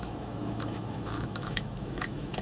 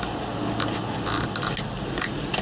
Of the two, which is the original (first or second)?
second